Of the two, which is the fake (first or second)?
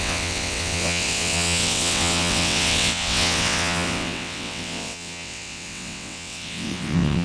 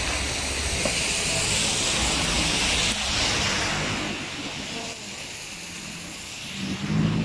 first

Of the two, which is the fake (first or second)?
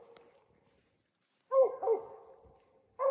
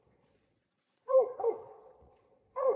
second